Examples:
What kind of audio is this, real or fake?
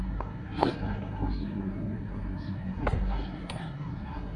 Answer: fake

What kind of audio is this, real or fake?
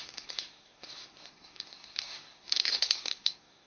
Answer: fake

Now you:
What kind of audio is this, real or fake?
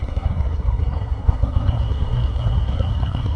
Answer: fake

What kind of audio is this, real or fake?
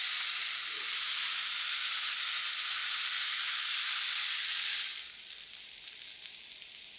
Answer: real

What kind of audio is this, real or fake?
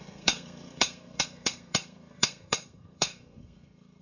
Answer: fake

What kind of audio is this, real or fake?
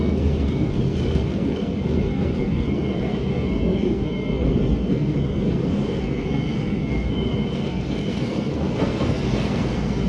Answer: fake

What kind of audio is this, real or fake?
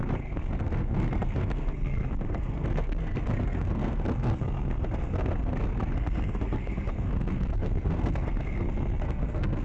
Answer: fake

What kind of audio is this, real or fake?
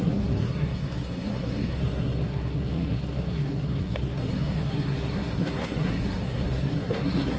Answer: fake